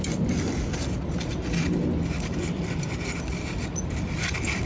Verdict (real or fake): real